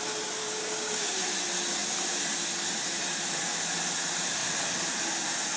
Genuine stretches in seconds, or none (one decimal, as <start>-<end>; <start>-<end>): 0.0-0.4; 1.1-5.6